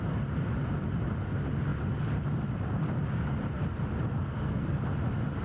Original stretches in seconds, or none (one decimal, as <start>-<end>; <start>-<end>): 0.0-4.2; 4.8-5.4